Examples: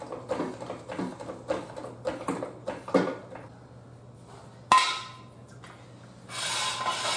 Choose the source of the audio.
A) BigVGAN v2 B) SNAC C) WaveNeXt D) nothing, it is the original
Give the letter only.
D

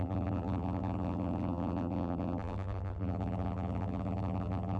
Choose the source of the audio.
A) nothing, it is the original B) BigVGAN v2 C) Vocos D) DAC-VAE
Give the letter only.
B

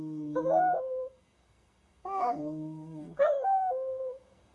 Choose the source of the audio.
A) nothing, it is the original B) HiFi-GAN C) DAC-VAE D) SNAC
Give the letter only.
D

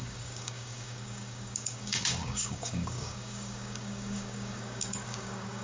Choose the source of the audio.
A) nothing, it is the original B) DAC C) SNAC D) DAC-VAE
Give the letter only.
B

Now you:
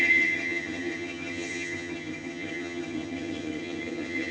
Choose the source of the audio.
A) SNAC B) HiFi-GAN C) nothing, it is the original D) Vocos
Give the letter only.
B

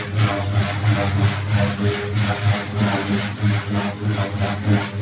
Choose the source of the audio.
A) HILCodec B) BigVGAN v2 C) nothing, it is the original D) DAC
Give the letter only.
C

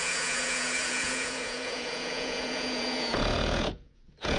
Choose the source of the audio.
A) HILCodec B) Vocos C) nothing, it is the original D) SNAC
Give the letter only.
B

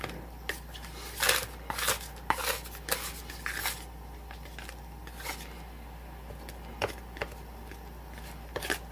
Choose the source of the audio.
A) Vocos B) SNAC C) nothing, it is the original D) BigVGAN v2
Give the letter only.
C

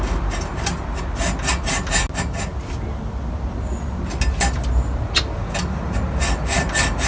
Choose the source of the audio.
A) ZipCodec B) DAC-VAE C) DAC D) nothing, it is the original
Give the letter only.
D